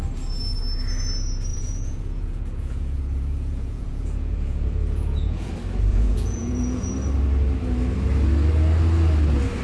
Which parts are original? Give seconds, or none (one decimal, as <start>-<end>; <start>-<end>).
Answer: 0.0-1.5; 5.5-5.9; 6.9-9.6